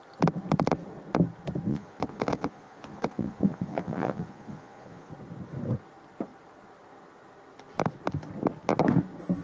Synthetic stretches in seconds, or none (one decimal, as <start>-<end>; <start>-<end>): 1.7-5.1